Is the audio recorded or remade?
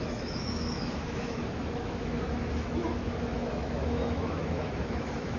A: remade